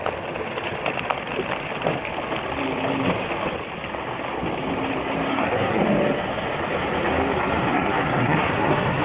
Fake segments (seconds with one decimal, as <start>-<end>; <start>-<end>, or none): 5.3-5.8; 7.7-9.0